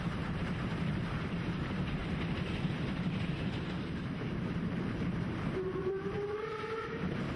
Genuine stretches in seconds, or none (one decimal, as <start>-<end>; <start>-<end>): 2.0-2.7